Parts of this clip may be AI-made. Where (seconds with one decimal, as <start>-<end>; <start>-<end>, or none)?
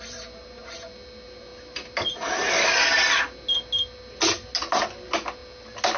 none